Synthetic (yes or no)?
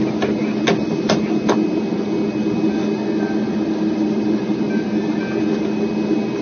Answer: no